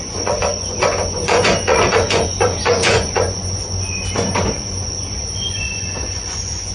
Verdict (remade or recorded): remade